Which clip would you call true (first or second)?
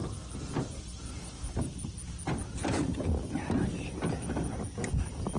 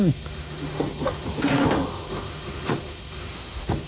first